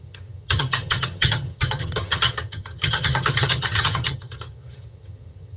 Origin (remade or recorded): remade